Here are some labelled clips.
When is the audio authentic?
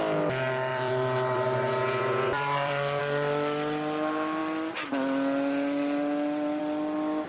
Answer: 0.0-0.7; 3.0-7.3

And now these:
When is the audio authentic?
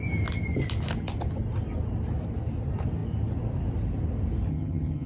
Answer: 0.0-4.5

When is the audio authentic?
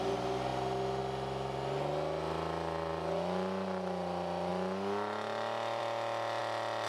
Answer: 0.0-6.9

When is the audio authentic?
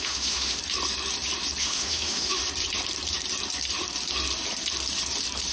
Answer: 0.6-1.6; 2.4-5.5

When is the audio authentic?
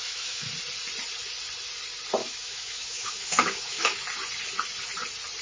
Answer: 0.5-2.2; 4.0-5.4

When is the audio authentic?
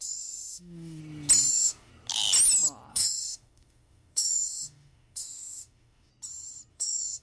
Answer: 1.0-1.5; 1.9-2.9; 6.1-6.7